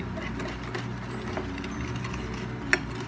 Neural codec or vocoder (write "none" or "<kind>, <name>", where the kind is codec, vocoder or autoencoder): none